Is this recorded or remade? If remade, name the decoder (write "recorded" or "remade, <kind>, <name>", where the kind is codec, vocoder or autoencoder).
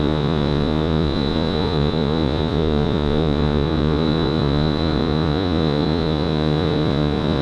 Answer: remade, vocoder, Vocos